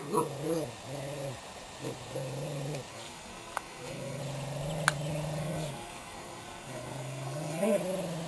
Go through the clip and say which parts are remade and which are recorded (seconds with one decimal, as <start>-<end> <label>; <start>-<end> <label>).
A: 0.0-2.9 recorded; 2.9-4.2 remade; 4.2-5.4 recorded; 5.4-7.8 remade; 7.8-8.3 recorded